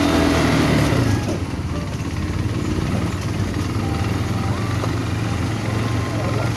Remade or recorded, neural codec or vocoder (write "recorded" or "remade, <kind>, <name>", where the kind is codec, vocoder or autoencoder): recorded